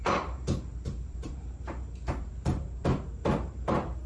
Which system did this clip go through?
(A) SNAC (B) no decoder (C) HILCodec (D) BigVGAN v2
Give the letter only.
D